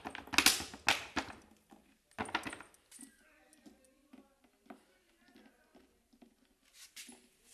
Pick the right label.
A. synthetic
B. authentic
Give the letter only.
B